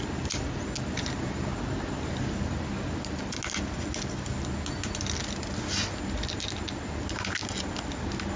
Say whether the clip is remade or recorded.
recorded